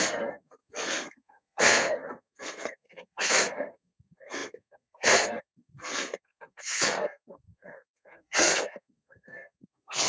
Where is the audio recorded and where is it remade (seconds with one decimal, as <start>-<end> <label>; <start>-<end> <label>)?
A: 0.0-10.1 remade